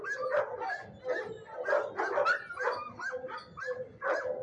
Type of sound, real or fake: real